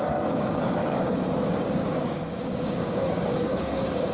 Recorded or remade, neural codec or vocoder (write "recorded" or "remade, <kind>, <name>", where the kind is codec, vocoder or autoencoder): remade, codec, DAC